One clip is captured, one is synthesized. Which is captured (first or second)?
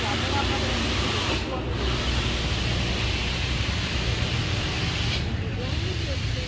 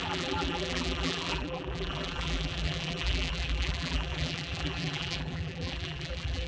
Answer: first